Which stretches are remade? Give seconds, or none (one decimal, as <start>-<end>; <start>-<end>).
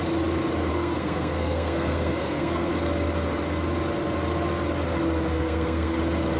0.7-2.7; 5.3-6.0